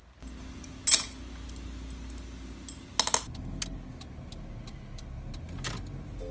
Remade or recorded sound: recorded